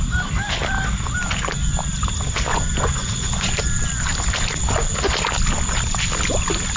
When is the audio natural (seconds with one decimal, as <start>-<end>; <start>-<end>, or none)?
0.0-2.5; 3.6-6.8